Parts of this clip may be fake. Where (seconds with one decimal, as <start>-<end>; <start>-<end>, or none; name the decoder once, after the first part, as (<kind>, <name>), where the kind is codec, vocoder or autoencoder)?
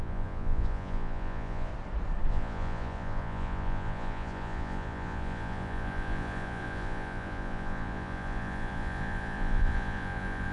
0.0-1.7 (vocoder, Vocos); 2.3-10.5